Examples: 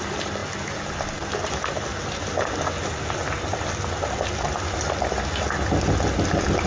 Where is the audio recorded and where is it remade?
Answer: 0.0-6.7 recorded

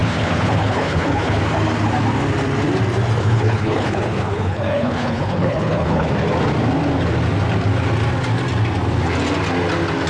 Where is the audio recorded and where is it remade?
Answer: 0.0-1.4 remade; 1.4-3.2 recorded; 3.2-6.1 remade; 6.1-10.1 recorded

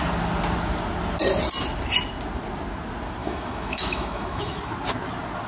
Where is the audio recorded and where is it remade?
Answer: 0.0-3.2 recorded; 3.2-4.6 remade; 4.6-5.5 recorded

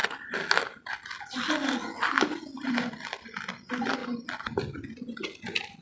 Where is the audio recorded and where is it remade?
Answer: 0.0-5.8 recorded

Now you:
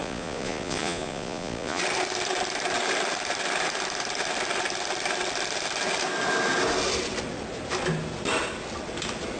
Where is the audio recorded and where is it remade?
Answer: 0.0-1.8 remade; 1.8-9.4 recorded

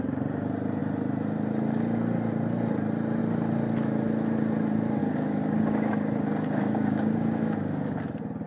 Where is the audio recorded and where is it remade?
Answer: 0.0-5.0 recorded; 5.0-7.9 remade; 7.9-8.5 recorded

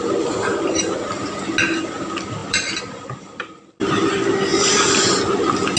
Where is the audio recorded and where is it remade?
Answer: 0.0-2.4 recorded; 2.4-3.8 remade; 3.8-5.8 recorded